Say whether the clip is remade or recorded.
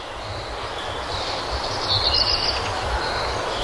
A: recorded